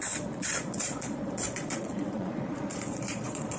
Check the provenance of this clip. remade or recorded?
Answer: remade